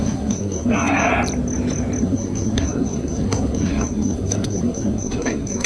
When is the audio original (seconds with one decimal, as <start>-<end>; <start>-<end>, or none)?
1.1-2.0